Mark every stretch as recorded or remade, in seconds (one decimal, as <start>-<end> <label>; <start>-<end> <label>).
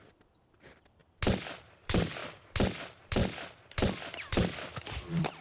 0.0-1.0 remade; 1.0-1.5 recorded; 1.5-2.2 remade; 2.2-2.8 recorded; 2.8-3.2 remade; 3.2-4.1 recorded; 4.1-5.4 remade